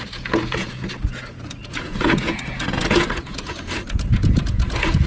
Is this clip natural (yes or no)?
no